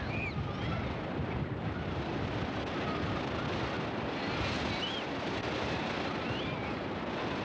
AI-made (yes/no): no